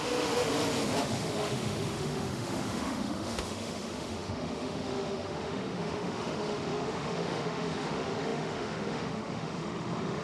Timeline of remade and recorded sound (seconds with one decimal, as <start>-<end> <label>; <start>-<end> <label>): 0.0-0.5 remade; 0.5-1.0 recorded; 1.0-10.2 remade